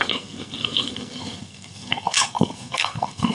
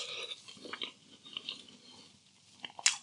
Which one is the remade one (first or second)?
first